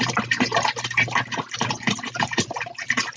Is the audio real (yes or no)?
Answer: no